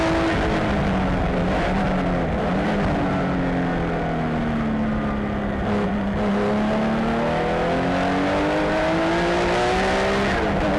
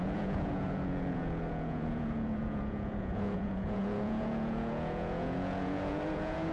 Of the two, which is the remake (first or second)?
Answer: second